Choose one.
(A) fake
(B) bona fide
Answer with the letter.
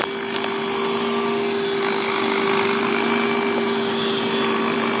B